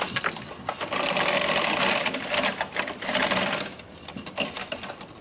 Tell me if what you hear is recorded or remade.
recorded